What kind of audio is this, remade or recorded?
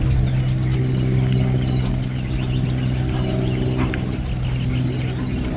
recorded